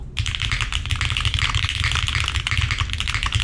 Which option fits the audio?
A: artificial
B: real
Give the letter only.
B